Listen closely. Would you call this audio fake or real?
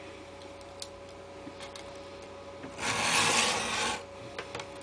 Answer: real